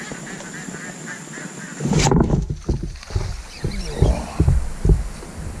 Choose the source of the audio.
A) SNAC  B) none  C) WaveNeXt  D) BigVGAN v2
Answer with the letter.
D